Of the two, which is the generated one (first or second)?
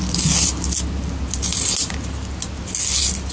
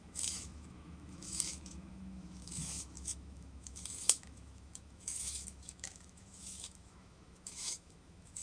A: second